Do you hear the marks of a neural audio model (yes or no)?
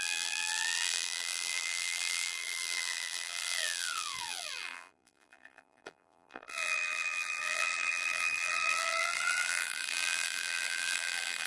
yes